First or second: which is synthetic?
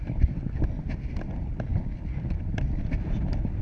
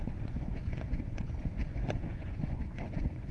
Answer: second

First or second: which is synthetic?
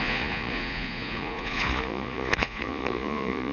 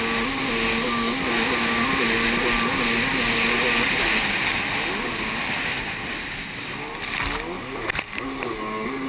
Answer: first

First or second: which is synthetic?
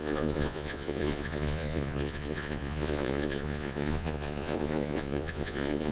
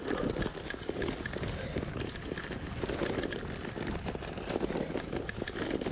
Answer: first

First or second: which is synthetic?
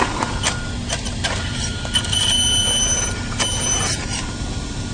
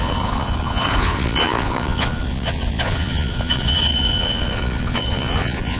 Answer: second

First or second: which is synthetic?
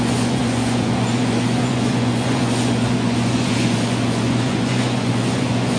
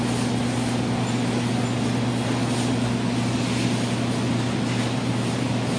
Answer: first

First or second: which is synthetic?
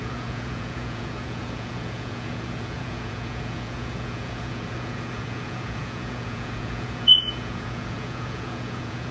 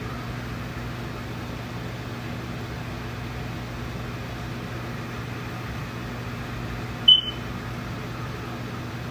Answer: first